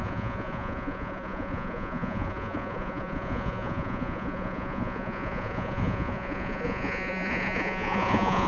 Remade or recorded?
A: remade